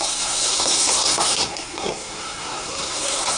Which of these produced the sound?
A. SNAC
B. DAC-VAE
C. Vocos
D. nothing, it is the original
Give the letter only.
A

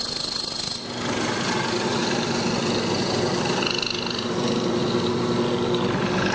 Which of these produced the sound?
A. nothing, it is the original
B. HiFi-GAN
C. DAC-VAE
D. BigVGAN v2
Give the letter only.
A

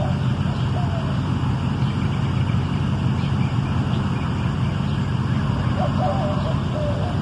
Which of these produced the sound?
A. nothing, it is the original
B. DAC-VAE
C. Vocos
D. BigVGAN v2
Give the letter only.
A